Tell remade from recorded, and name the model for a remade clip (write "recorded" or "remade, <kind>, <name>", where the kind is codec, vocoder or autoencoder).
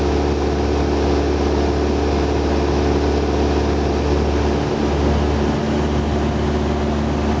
recorded